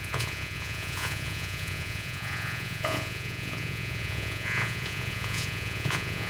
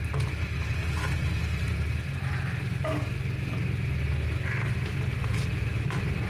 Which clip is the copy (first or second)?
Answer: first